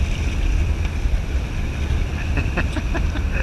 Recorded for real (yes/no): yes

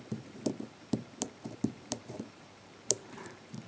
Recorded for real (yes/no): no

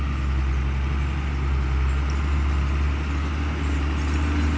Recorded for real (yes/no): yes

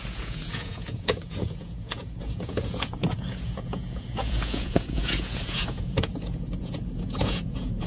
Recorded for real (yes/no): no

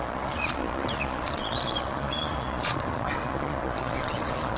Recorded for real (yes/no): no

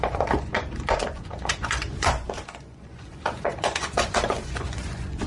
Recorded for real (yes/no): no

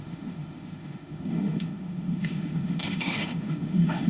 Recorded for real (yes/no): no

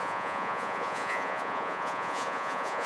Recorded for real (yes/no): no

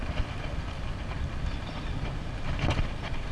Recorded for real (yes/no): yes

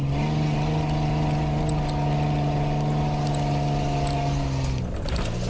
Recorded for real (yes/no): yes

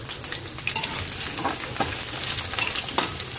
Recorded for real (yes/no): yes